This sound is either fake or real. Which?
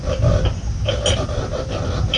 real